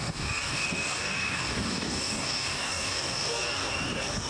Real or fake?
fake